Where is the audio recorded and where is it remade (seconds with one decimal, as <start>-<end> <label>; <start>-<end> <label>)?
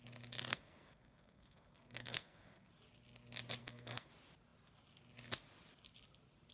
0.0-0.5 recorded; 0.5-2.7 remade; 2.7-3.6 recorded; 3.6-4.1 remade; 4.1-6.5 recorded